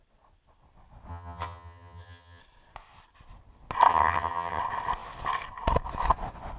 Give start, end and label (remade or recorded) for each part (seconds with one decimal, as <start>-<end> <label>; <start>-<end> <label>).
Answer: 0.0-1.1 recorded; 1.1-2.4 remade; 2.4-3.9 recorded; 3.9-4.6 remade; 4.6-6.6 recorded